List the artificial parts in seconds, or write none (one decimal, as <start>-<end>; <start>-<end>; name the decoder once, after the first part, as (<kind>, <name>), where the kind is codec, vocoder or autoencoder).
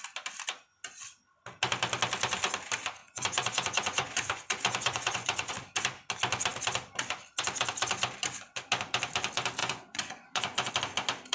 3.0-5.5 (vocoder, Vocos); 9.6-10.7